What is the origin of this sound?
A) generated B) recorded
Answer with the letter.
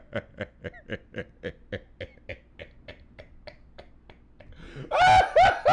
B